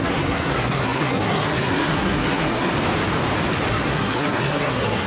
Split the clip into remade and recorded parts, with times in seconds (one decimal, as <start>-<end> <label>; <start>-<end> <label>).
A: 0.0-2.7 remade; 2.7-3.7 recorded; 3.7-5.1 remade